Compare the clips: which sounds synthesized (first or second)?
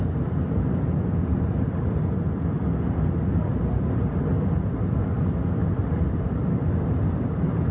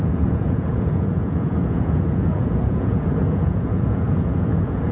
second